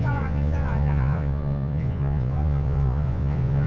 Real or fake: fake